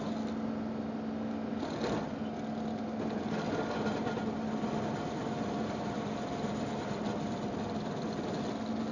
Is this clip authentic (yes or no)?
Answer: yes